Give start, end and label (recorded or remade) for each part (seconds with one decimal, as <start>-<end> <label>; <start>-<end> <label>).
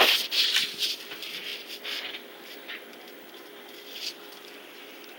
0.0-5.2 remade